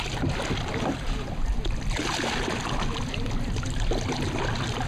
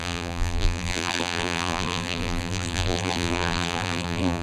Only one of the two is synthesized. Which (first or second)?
second